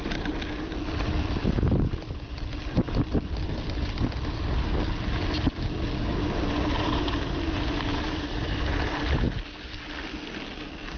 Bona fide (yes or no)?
yes